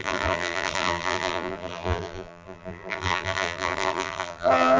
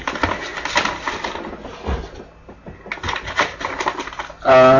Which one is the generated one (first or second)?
first